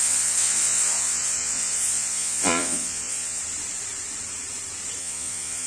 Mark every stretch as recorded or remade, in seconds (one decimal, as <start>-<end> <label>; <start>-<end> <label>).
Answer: 0.0-3.4 remade; 3.4-5.0 recorded; 5.0-5.7 remade